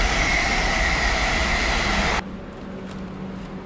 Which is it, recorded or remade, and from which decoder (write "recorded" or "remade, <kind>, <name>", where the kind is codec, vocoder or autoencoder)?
recorded